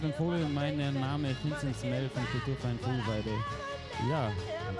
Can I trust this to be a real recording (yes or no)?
yes